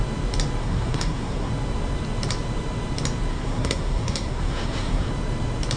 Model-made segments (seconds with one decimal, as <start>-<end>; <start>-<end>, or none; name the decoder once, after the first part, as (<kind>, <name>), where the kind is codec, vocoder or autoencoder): 0.6-1.5 (codec, SNAC); 3.3-5.1